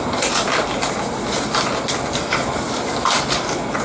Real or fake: real